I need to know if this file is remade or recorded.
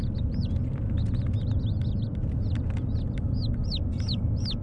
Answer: recorded